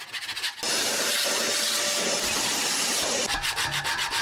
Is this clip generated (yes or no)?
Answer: no